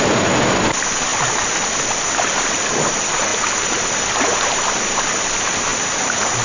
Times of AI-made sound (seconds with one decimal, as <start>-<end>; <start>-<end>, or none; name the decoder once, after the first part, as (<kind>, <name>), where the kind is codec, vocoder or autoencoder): 5.7-6.4 (vocoder, BigVGAN v2)